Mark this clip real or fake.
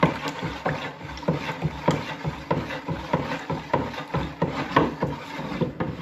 real